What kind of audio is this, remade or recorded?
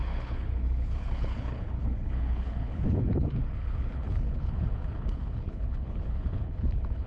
remade